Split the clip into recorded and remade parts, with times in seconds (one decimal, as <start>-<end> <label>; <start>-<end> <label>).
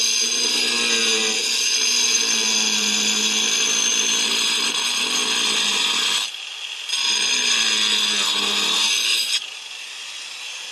0.0-10.7 recorded